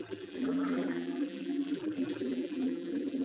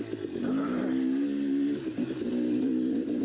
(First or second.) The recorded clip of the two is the second